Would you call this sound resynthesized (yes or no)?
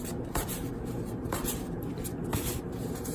yes